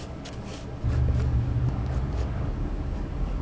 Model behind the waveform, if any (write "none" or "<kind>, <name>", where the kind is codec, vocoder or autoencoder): codec, DAC